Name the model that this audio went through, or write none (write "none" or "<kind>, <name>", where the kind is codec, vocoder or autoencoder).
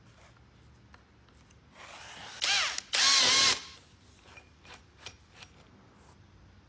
none